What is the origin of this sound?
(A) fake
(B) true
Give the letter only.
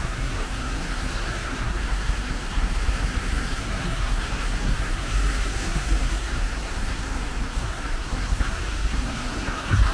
A